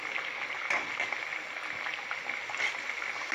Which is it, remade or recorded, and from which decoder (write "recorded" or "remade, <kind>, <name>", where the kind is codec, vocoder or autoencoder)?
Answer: recorded